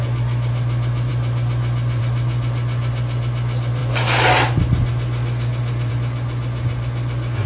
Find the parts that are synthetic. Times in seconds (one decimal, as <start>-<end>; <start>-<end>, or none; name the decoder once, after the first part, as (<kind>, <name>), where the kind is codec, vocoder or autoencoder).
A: none